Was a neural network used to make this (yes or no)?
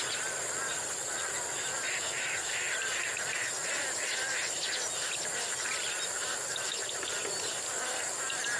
no